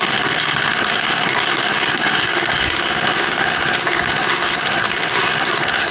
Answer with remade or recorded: remade